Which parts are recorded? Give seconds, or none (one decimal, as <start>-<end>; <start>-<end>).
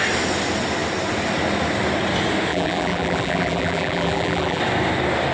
0.0-2.5; 4.6-5.3